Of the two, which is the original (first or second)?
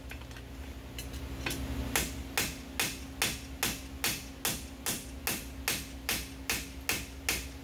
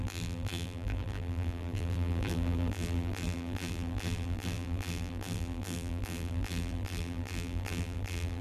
first